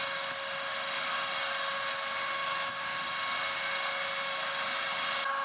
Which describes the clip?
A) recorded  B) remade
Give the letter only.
A